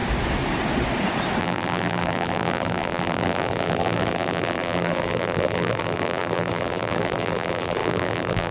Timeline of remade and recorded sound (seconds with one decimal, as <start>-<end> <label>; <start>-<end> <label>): 0.0-1.4 recorded; 1.4-8.5 remade